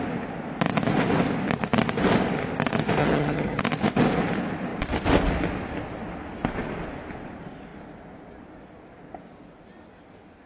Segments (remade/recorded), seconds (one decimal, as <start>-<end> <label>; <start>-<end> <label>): 0.0-3.0 recorded; 3.0-3.6 remade; 3.6-10.5 recorded